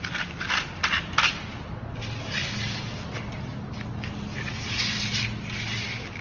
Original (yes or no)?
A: yes